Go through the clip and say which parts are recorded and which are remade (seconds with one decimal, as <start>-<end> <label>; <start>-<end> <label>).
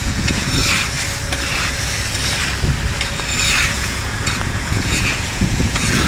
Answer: 0.0-0.6 remade; 0.6-3.7 recorded; 3.7-6.1 remade